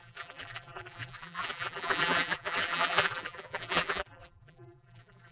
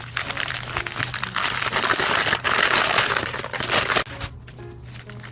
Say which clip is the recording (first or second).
second